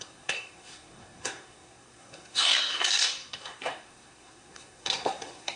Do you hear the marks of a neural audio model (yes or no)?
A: yes